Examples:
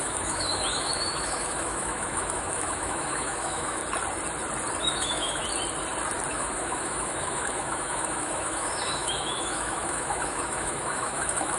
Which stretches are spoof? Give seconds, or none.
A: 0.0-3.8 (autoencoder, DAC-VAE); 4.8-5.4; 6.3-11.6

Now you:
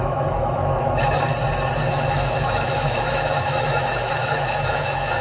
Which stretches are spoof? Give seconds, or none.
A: 0.0-1.3 (autoencoder, DAC-VAE); 1.9-5.2

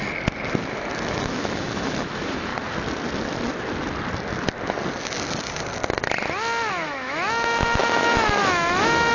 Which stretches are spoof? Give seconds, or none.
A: 0.7-2.5 (autoencoder, DAC-VAE); 6.7-9.1

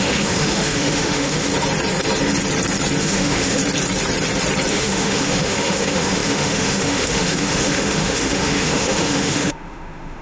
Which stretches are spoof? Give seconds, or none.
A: 0.0-1.5 (autoencoder, DAC-VAE); 3.0-3.6; 4.7-10.2

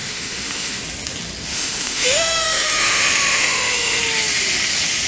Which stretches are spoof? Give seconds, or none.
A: 0.0-0.8 (autoencoder, DAC-VAE); 1.5-4.0

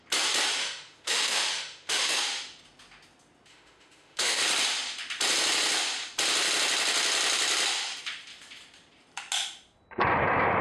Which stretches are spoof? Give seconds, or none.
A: 0.6-2.2 (autoencoder, DAC-VAE); 3.5-4.4

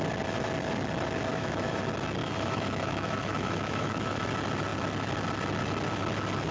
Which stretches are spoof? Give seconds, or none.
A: 1.3-1.8 (autoencoder, DAC-VAE); 2.2-4.2